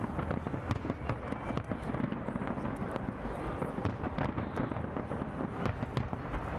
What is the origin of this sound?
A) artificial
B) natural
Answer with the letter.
B